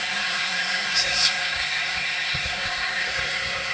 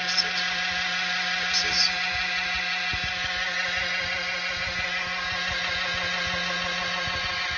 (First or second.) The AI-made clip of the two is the first